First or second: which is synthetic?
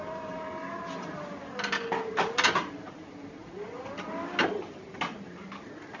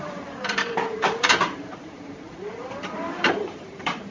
second